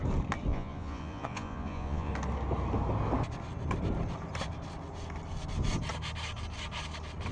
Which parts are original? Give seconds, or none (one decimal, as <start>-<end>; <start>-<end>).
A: 0.0-0.5; 2.1-7.3

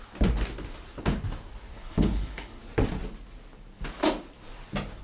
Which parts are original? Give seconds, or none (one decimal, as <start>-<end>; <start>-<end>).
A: 0.0-1.7; 2.6-5.0

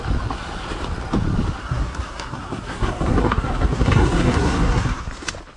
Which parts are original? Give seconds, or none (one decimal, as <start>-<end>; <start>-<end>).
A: 0.0-1.6; 5.0-5.6

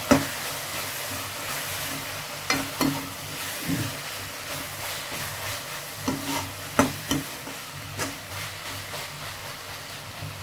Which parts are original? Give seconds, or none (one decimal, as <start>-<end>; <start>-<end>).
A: 0.0-0.7; 2.2-5.3; 8.5-10.4

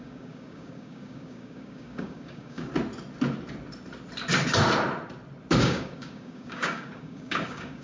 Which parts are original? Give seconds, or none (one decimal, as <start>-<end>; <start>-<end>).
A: 2.7-5.6

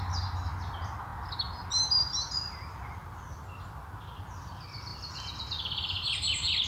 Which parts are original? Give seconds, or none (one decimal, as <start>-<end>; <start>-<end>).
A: 0.0-6.7